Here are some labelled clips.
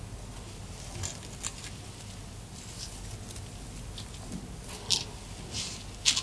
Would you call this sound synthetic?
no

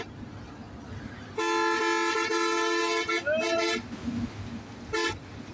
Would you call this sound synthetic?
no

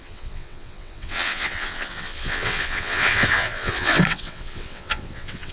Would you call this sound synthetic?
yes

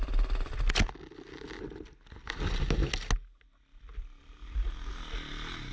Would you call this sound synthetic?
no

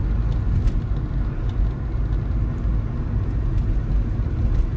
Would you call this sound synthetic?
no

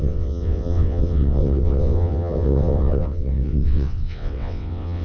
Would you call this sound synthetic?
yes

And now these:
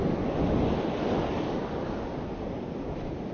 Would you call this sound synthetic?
no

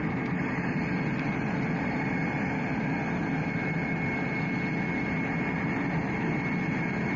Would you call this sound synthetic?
no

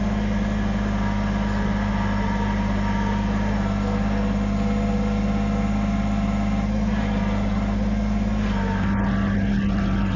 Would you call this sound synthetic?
no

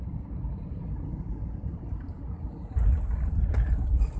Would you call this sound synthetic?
no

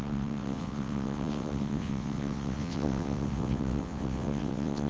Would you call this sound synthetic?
yes